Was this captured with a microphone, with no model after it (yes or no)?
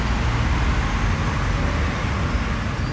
yes